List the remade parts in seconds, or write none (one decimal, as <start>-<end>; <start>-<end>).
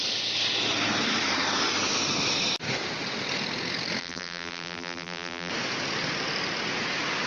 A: 4.0-5.5